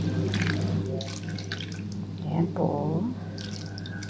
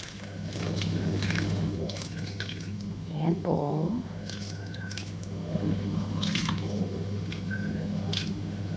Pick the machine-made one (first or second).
second